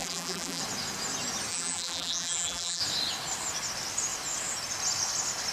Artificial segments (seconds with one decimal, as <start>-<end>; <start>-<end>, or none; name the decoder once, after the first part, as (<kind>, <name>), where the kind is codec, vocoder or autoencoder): 0.0-0.6 (vocoder, BigVGAN v2); 1.5-2.8